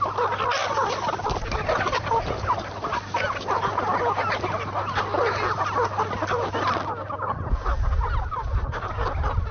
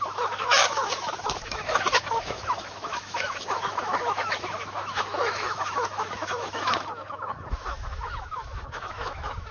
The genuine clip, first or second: first